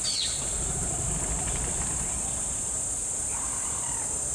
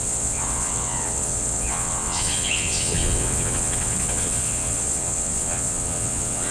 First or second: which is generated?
second